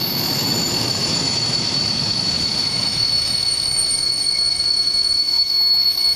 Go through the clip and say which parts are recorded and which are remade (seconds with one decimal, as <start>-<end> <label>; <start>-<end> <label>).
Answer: 0.0-6.2 remade